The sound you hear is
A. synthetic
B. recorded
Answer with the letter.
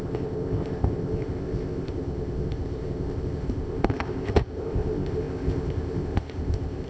A